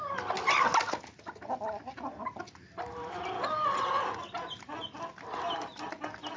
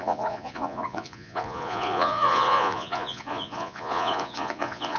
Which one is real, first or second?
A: first